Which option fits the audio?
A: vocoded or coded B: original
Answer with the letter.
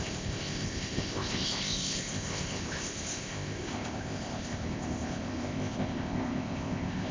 A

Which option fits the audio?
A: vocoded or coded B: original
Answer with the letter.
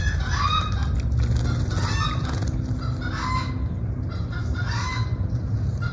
B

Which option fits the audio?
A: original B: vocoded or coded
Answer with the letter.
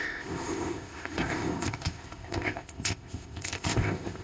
B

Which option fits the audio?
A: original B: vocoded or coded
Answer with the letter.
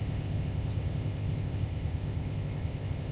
B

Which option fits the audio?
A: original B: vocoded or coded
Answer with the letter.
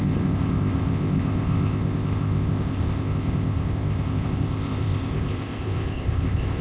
B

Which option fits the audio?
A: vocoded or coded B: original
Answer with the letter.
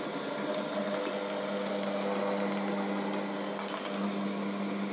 B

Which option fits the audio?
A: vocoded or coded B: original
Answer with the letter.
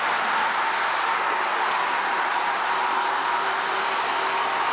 B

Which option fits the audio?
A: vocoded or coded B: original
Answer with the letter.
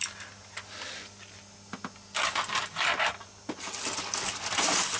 B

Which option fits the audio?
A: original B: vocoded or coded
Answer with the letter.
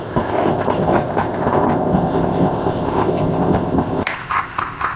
B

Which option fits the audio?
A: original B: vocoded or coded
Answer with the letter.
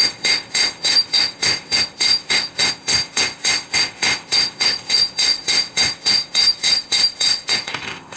B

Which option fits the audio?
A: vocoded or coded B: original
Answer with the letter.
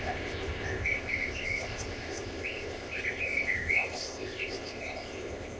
A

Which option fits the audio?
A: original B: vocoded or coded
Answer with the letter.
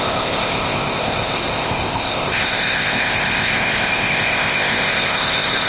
B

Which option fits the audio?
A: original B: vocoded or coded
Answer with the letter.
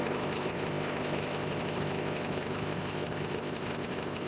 B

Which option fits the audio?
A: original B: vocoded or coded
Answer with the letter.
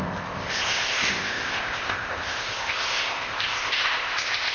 B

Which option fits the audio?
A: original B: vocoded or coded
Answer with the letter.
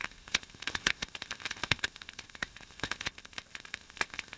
B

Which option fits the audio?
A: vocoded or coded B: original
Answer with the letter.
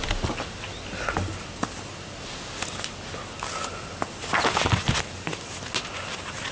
B